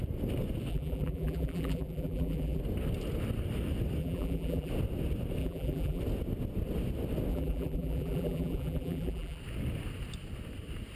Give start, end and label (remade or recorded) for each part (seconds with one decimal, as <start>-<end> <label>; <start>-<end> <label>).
0.0-0.7 recorded; 0.7-2.6 remade; 2.6-4.0 recorded; 4.0-4.7 remade; 4.7-5.4 recorded; 5.4-6.0 remade; 6.0-7.3 recorded; 7.3-9.4 remade; 9.4-10.9 recorded